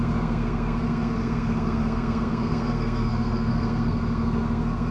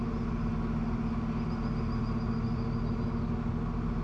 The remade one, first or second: first